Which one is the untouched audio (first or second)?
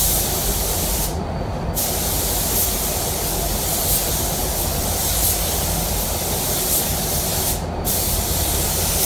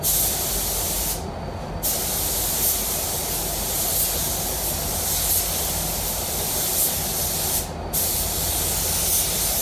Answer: second